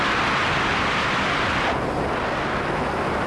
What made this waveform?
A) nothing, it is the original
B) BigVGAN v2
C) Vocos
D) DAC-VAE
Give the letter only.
B